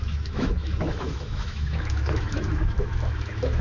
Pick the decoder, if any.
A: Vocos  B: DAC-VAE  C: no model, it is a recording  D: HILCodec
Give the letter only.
B